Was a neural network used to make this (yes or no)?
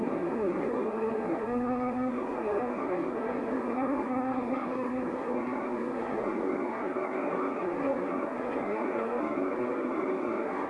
yes